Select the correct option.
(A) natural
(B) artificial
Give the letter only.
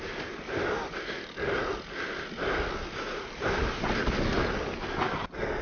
A